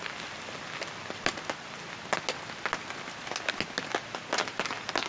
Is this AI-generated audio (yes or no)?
no